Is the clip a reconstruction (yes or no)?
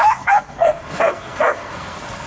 yes